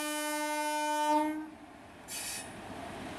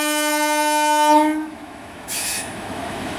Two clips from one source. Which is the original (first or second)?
first